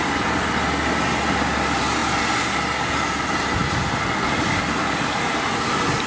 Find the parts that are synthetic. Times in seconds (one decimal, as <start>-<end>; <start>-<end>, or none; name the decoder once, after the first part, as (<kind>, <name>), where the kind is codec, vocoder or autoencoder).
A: none